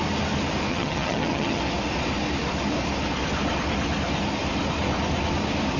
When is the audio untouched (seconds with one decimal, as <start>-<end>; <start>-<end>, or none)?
0.0-0.7; 1.6-5.8